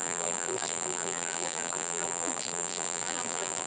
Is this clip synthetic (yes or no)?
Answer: yes